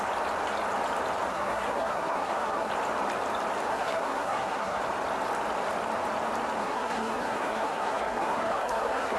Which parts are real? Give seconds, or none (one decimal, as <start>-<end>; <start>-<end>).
0.0-1.3; 2.7-3.7; 4.8-6.6